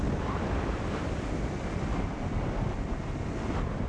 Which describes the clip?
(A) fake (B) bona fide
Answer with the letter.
B